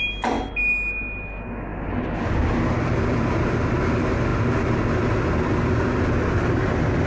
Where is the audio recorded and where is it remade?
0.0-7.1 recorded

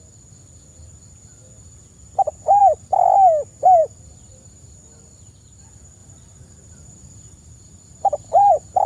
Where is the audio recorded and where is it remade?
0.0-3.8 recorded; 3.8-5.6 remade; 5.6-6.0 recorded; 6.0-8.5 remade; 8.5-8.9 recorded

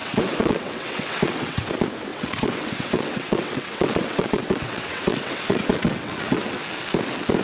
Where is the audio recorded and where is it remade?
0.0-1.7 remade; 1.7-2.1 recorded; 2.1-6.5 remade; 6.5-7.4 recorded

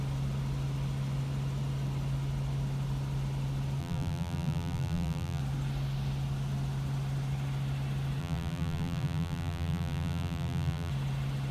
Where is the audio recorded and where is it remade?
0.0-3.8 recorded; 3.8-5.4 remade; 5.4-8.2 recorded; 8.2-10.9 remade; 10.9-11.5 recorded

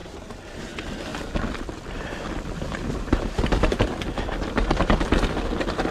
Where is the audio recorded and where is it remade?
0.0-0.6 remade; 0.6-2.7 recorded; 2.7-3.9 remade; 3.9-5.9 recorded

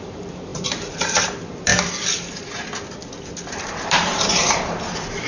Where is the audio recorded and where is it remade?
0.0-1.7 remade; 1.7-3.5 recorded; 3.5-5.3 remade

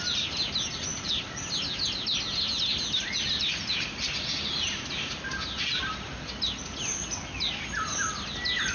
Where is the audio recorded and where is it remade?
0.0-0.9 recorded; 0.9-1.4 remade; 1.4-8.7 recorded